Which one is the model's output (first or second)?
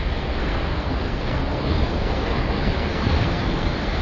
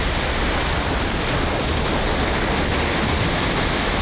first